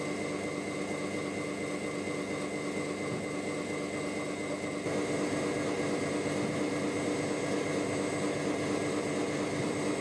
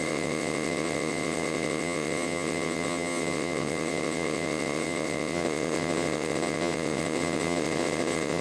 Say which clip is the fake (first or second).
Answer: second